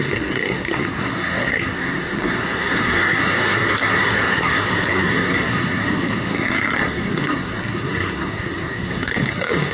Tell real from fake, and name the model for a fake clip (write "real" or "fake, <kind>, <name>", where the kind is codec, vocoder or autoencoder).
fake, codec, SNAC